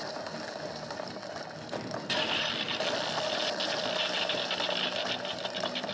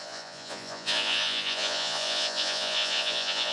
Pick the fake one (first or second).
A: second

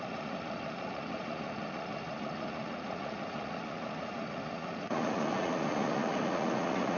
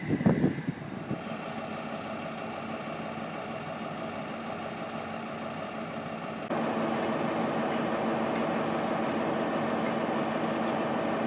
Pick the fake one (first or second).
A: first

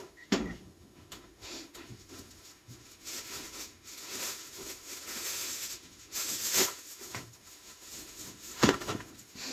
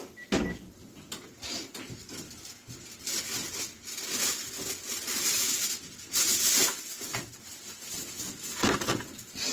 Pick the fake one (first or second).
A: first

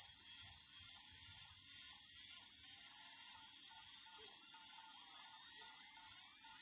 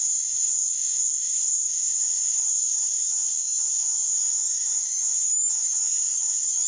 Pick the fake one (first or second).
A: second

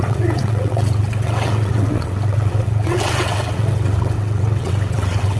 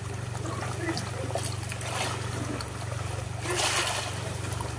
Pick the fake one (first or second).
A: first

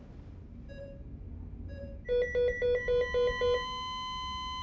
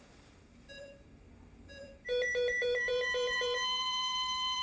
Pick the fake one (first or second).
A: second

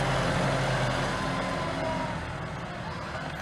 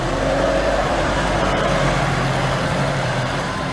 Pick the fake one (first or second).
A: second